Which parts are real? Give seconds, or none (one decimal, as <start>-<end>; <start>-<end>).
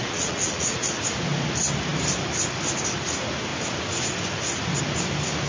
0.9-5.5